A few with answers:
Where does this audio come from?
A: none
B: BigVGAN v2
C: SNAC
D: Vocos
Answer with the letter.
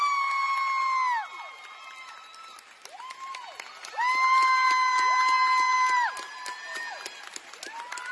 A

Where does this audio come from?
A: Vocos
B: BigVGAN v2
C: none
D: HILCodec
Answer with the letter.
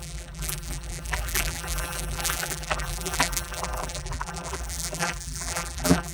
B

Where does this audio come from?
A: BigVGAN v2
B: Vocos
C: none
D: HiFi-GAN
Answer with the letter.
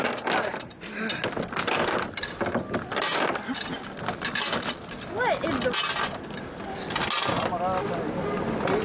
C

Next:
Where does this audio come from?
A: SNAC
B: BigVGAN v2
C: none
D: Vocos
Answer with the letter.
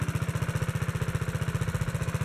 C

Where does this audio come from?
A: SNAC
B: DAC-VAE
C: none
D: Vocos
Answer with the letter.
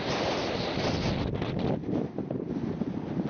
C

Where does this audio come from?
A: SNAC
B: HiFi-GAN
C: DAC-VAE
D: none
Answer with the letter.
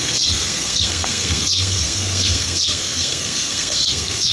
A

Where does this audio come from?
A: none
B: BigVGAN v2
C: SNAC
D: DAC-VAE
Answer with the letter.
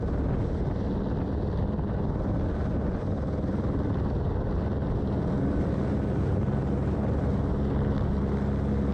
A